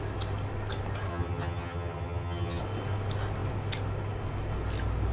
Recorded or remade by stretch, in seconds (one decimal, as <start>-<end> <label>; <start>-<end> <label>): 0.0-1.1 recorded; 1.1-2.6 remade; 2.6-5.1 recorded